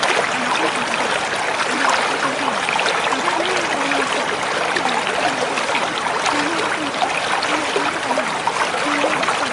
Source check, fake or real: real